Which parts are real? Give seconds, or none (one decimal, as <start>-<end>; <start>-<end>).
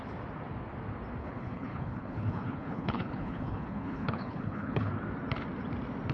0.0-1.2; 4.9-6.1